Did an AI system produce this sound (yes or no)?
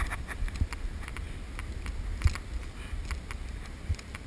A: no